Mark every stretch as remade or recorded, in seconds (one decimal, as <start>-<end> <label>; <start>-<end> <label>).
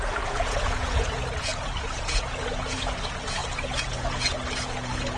0.0-5.2 remade